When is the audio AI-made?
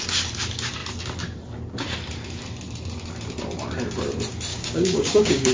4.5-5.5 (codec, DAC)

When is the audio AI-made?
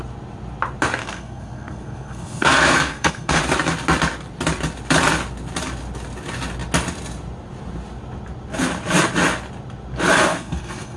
1.0-3.4 (codec, SNAC); 10.3-11.0